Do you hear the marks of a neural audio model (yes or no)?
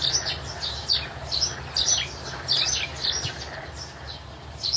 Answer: no